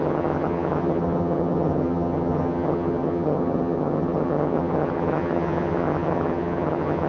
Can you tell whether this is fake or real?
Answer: fake